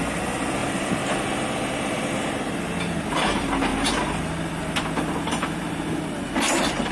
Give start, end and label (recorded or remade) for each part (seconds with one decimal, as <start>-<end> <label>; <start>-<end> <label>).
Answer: 0.0-0.6 recorded; 0.6-2.6 remade; 2.6-6.9 recorded